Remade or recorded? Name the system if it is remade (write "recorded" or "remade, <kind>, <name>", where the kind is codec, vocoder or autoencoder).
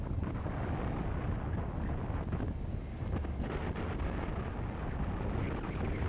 recorded